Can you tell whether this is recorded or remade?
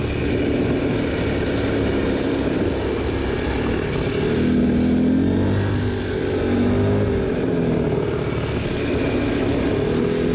recorded